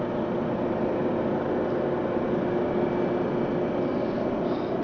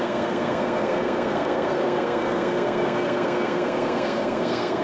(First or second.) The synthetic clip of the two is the second